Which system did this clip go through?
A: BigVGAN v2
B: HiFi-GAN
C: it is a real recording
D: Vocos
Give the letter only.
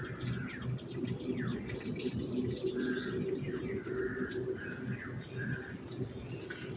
C